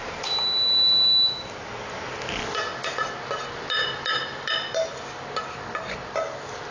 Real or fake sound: real